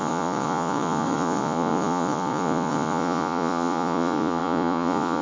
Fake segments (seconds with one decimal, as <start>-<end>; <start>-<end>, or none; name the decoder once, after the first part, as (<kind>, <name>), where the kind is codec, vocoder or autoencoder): 0.0-5.2 (vocoder, Vocos)

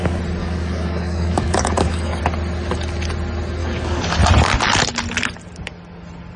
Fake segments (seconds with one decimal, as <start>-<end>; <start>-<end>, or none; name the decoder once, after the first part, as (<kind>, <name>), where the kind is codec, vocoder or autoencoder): 0.4-2.2 (codec, DAC); 3.6-4.2

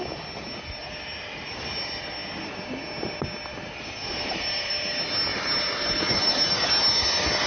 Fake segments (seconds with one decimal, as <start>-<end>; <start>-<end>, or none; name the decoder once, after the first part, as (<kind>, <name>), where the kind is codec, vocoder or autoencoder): 4.0-4.7 (vocoder, BigVGAN v2); 5.3-6.4

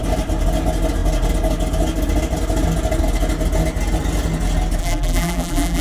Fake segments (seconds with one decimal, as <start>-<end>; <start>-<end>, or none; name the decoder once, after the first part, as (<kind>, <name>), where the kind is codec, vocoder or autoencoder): 4.8-5.8 (vocoder, BigVGAN v2)

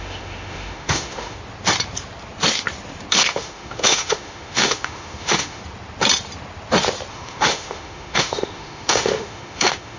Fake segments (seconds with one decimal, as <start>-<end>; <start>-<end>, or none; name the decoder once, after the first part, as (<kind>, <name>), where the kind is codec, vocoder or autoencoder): 0.0-1.4 (autoencoder, DAC-VAE); 3.1-5.6; 7.1-10.0